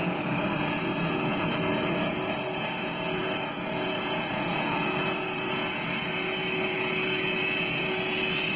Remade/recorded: remade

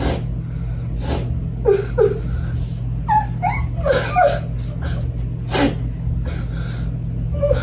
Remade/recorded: recorded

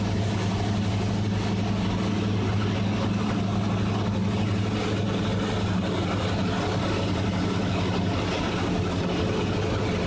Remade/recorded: recorded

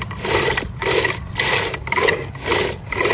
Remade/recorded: recorded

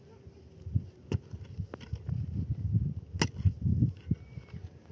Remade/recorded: recorded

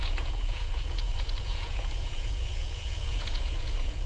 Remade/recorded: remade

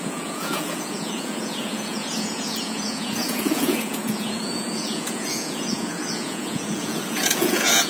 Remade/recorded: remade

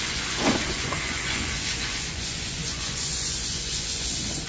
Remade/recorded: remade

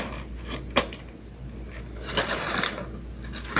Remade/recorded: recorded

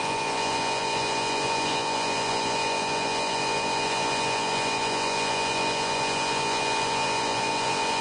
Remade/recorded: remade